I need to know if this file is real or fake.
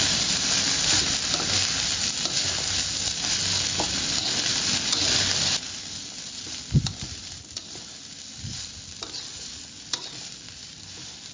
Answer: fake